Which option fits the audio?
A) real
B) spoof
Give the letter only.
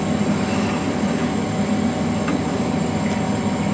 A